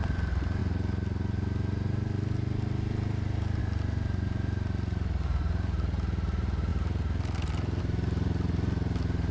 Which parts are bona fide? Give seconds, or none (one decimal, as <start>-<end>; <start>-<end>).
0.0-9.3